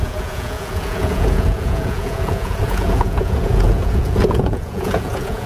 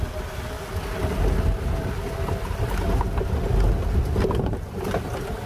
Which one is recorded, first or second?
second